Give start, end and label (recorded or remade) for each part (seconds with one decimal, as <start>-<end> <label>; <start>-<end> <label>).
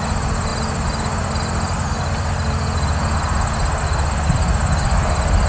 0.0-5.5 recorded